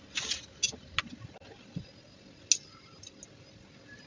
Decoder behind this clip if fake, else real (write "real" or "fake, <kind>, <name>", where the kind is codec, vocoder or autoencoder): real